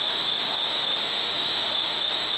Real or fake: fake